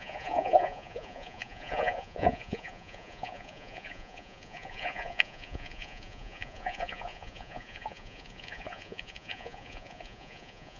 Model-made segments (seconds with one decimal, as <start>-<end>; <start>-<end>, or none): 0.0-10.8